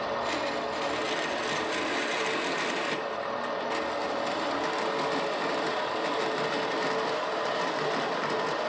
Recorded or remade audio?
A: recorded